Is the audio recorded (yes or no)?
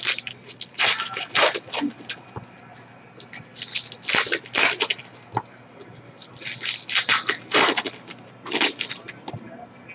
yes